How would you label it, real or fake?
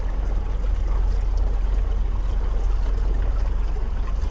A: real